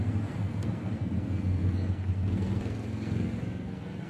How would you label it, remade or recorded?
remade